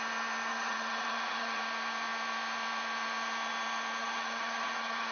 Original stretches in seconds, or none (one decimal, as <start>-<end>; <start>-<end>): 0.0-0.5; 1.6-4.0